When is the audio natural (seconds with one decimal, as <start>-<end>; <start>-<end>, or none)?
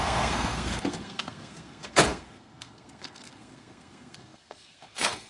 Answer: none